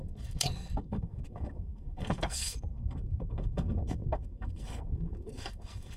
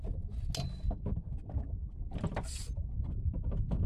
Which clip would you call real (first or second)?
second